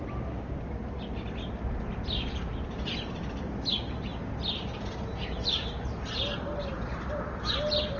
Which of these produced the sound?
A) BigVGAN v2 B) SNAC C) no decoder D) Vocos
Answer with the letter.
C